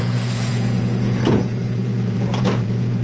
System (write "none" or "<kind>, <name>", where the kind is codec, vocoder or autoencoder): vocoder, Vocos